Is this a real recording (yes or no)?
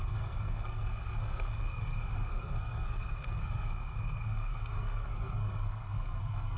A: no